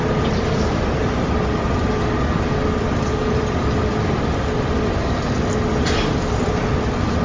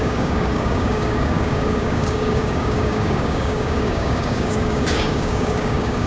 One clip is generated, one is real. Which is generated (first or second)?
second